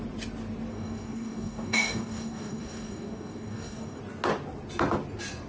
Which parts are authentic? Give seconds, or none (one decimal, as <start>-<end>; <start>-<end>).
0.0-0.7; 4.0-5.5